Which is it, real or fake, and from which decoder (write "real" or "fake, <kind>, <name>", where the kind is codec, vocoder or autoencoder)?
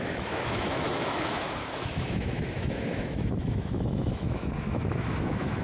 fake, autoencoder, DAC-VAE